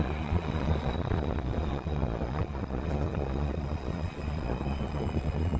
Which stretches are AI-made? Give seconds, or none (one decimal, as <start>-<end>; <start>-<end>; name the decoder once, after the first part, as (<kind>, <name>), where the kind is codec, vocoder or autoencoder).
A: 0.0-5.6 (vocoder, Vocos)